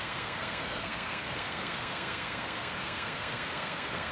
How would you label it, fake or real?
fake